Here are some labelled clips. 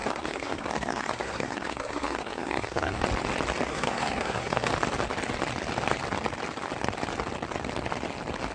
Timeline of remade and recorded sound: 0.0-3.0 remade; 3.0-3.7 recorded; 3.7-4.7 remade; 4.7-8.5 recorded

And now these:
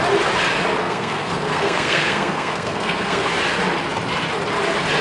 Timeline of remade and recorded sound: 0.0-0.8 recorded; 0.8-3.3 remade; 3.3-5.0 recorded